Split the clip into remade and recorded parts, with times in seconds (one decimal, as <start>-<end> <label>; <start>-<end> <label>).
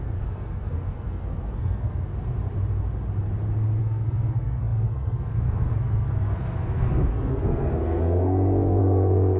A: 0.0-2.1 remade; 2.1-3.8 recorded; 3.8-9.4 remade